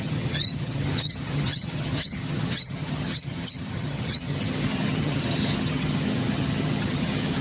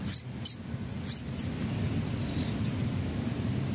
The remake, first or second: first